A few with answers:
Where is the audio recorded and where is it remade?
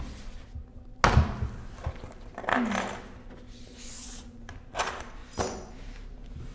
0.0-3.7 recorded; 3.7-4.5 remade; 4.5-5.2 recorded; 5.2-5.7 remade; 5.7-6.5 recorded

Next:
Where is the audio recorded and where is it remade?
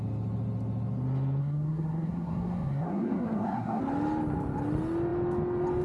0.0-1.4 recorded; 1.4-3.8 remade; 3.8-5.8 recorded